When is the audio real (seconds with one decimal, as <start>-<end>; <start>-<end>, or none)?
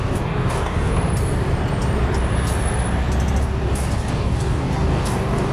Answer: 0.9-3.4